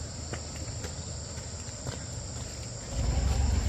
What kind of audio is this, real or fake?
real